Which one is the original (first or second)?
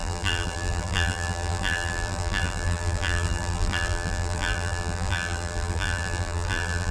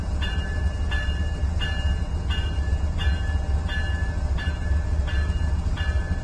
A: second